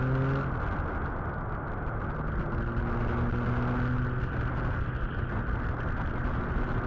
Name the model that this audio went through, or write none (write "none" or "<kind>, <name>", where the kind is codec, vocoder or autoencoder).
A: none